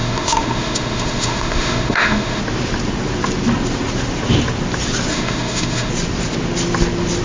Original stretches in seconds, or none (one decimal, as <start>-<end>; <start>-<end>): 2.4-5.1; 5.9-7.2

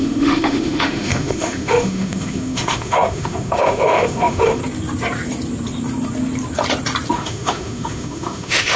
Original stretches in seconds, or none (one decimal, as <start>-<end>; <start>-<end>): 4.6-7.1